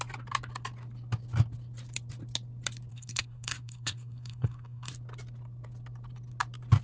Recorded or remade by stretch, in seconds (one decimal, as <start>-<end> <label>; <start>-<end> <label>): 0.0-2.9 recorded; 2.9-4.9 remade; 4.9-6.8 recorded